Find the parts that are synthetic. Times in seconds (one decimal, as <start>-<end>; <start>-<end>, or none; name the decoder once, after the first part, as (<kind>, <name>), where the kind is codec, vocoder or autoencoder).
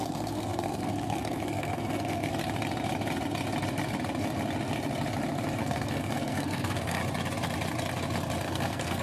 0.0-2.3 (codec, SNAC); 5.6-7.0; 8.4-9.0